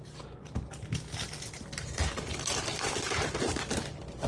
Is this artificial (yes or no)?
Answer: no